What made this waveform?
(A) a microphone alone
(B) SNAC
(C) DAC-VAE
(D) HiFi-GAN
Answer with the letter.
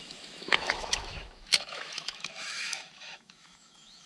C